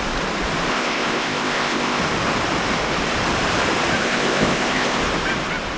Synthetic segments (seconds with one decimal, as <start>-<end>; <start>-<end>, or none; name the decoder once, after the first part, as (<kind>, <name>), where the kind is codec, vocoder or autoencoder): 0.7-2.0 (codec, ZipCodec); 4.0-5.0